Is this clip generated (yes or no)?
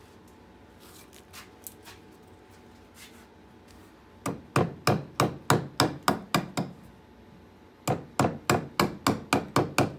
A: no